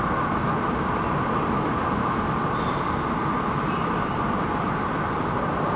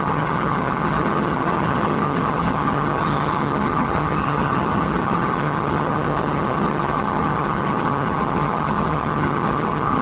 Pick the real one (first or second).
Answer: first